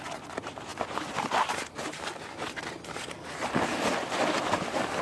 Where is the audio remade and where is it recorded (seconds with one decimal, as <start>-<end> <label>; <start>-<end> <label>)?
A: 0.0-5.0 recorded